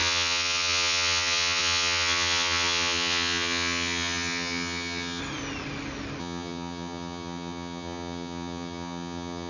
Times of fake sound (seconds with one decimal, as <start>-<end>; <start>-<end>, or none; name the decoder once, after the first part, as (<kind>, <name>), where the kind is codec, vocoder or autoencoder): 0.0-5.2 (vocoder, HiFi-GAN); 6.2-9.5